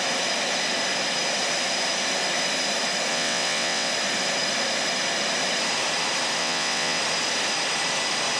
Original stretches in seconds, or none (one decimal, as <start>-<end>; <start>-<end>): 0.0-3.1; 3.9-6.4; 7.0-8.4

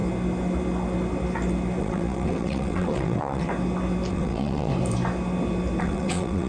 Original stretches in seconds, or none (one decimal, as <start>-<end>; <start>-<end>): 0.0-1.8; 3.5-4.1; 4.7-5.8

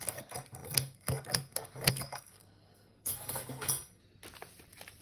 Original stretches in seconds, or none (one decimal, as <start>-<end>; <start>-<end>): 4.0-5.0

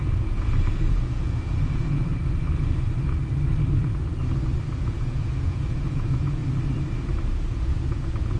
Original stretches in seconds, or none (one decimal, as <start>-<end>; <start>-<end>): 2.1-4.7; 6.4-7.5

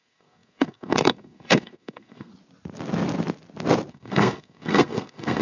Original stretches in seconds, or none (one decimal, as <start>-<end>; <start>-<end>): 2.3-3.9

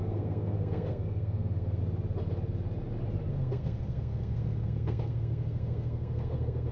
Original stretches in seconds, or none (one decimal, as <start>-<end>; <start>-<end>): 1.8-3.3